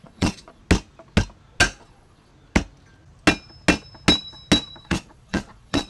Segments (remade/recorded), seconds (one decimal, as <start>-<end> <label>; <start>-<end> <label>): 0.0-0.6 remade; 0.6-1.8 recorded; 1.8-2.3 remade; 2.3-4.8 recorded; 4.8-5.9 remade